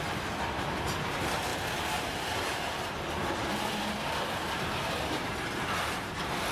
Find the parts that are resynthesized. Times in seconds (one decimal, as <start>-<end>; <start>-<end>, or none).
1.5-5.0